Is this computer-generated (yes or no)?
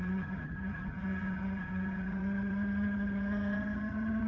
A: yes